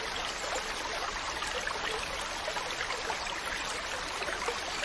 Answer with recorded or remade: recorded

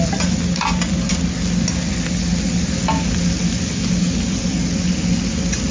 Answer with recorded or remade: recorded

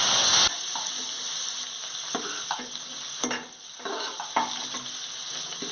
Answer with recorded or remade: recorded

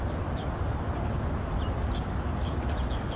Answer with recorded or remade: recorded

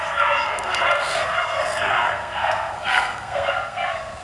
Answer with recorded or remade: remade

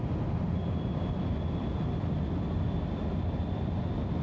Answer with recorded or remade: recorded